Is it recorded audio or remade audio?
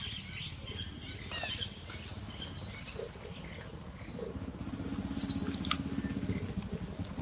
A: recorded